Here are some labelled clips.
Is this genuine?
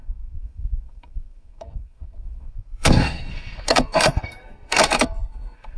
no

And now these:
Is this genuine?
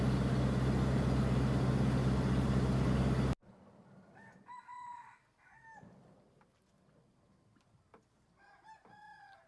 yes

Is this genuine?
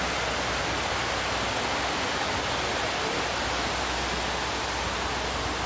yes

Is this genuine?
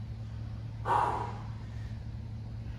yes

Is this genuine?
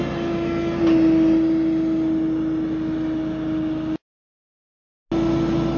yes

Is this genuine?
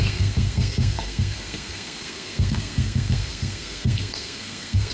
no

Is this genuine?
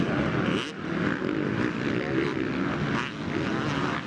yes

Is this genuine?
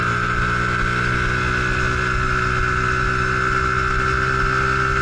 yes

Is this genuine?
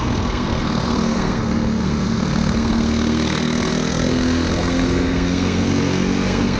no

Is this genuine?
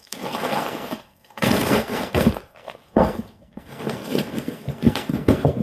no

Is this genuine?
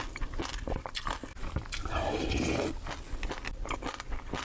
yes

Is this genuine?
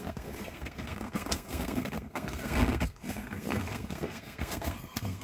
no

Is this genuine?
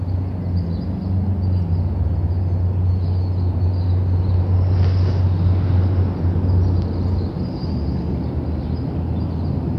yes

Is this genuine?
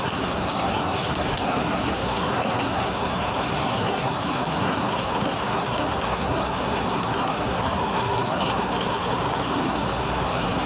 no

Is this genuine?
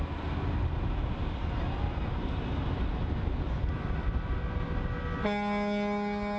yes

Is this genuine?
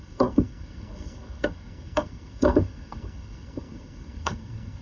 no